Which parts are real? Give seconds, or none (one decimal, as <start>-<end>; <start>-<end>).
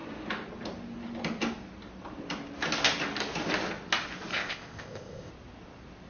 0.0-4.3; 5.3-6.1